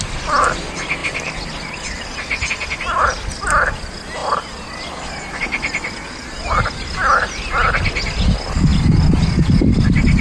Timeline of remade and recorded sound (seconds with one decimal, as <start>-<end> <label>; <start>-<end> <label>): 0.0-10.2 recorded